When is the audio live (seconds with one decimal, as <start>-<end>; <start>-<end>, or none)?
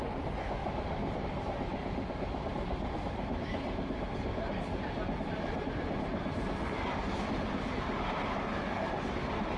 0.0-0.6; 1.2-9.6